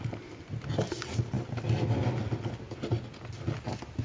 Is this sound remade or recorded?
recorded